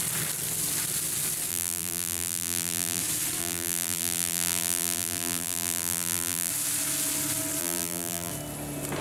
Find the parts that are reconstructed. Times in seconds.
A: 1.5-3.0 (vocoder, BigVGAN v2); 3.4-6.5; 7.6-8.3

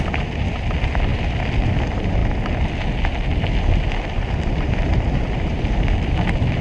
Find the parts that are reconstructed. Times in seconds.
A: 0.0-2.2 (vocoder, BigVGAN v2); 4.5-6.6

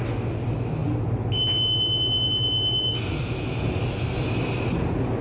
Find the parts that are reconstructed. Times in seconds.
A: none

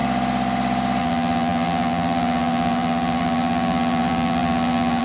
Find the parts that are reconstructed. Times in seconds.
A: 1.0-5.0 (vocoder, BigVGAN v2)

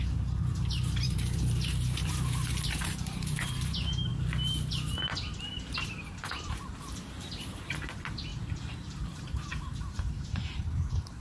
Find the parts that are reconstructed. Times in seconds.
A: 0.0-4.1 (vocoder, BigVGAN v2); 6.3-11.2

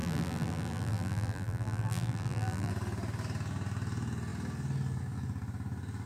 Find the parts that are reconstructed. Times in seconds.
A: 0.0-2.7 (vocoder, BigVGAN v2)